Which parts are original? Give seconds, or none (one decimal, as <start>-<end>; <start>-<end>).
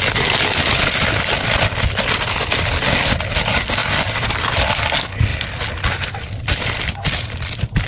0.0-3.8; 4.4-5.3; 6.9-7.9